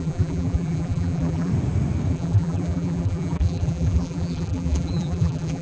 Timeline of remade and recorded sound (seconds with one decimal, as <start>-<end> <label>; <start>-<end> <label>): 0.0-1.5 remade; 1.5-2.1 recorded; 2.1-5.6 remade

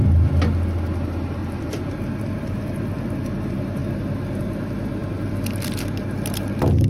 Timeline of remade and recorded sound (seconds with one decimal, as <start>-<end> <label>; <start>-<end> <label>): 0.0-1.4 recorded; 1.4-3.3 remade; 3.3-5.0 recorded; 5.0-5.8 remade; 5.8-6.9 recorded

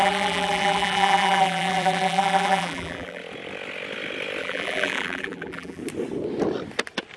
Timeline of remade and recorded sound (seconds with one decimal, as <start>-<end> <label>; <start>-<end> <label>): 0.0-3.2 remade; 3.2-4.4 recorded; 4.4-5.8 remade; 5.8-7.2 recorded

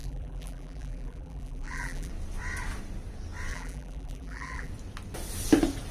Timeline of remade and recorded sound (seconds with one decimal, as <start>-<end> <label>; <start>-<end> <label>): 0.0-2.1 remade; 2.1-3.5 recorded; 3.5-4.7 remade; 4.7-5.9 recorded

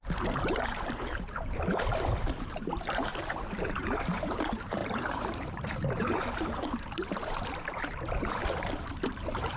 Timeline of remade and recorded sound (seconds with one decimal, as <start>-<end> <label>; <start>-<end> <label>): 0.0-9.6 remade

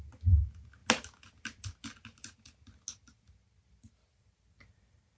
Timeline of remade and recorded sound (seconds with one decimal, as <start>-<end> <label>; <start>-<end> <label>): 0.0-5.2 recorded

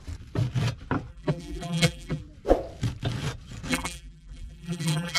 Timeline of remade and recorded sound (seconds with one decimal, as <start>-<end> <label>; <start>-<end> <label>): 0.0-1.1 recorded; 1.1-2.2 remade; 2.2-3.7 recorded; 3.7-5.2 remade